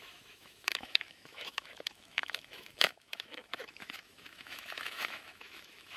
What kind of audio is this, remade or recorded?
remade